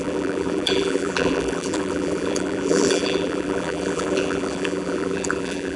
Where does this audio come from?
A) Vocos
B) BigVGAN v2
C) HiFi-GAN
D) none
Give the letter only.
B